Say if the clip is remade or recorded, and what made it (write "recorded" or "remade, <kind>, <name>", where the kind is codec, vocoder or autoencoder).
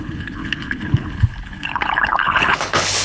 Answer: remade, codec, HILCodec